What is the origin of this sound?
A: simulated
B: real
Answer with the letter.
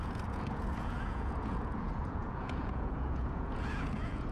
A